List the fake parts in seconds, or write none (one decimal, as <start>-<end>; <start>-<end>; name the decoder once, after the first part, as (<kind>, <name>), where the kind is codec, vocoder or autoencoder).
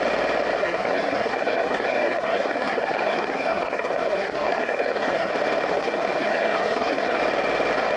0.6-5.3 (codec, SNAC); 5.7-7.2